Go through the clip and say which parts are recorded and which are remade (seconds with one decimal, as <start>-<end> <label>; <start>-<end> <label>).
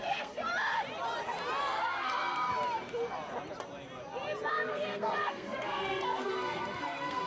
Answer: 0.0-0.5 remade; 0.5-1.6 recorded; 1.6-2.5 remade; 2.5-4.5 recorded; 4.5-7.3 remade